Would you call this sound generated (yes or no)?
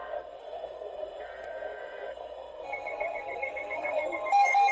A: yes